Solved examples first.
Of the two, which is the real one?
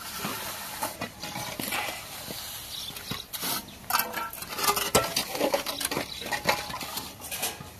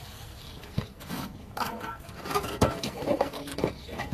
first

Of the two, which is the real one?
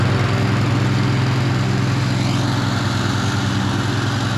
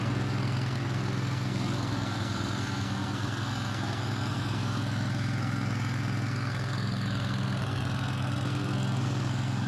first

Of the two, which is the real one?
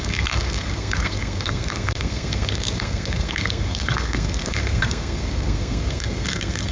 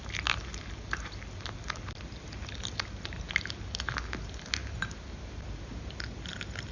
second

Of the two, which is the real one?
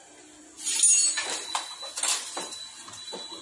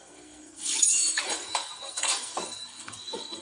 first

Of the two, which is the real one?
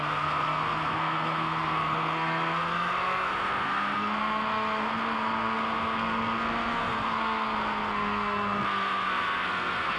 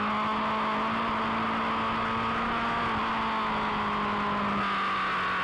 second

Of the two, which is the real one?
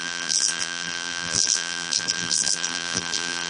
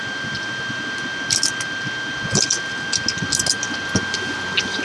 second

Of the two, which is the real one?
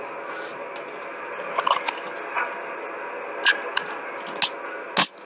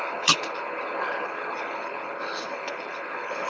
first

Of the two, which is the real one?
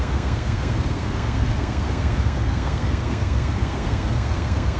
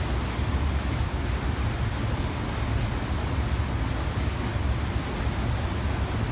second